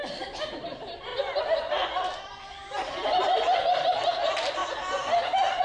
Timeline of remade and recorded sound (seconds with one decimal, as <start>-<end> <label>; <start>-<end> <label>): 0.0-1.1 remade; 1.1-1.9 recorded; 1.9-2.6 remade; 2.6-3.2 recorded; 3.2-4.6 remade; 4.6-5.6 recorded